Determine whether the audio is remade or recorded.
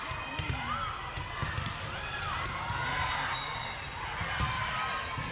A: recorded